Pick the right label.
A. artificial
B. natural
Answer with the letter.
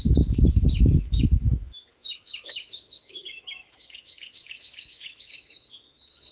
A